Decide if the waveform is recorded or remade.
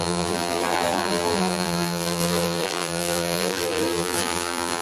remade